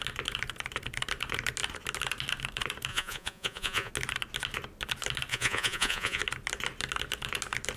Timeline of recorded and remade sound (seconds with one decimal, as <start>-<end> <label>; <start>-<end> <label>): 0.0-2.9 recorded; 2.9-3.9 remade; 3.9-5.3 recorded; 5.3-6.2 remade; 6.2-7.8 recorded